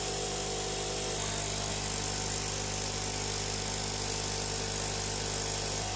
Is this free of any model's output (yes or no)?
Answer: yes